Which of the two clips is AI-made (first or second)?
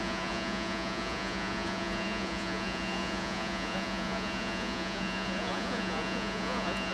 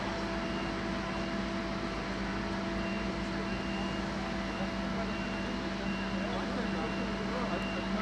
first